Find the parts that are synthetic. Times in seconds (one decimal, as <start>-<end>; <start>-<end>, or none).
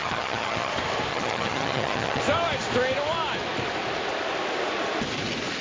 0.0-0.7; 1.1-2.2